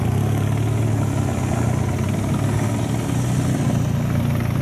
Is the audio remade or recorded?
recorded